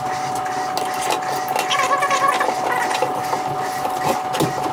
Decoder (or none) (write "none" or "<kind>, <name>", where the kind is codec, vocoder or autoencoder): none